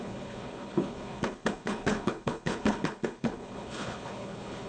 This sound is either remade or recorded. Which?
remade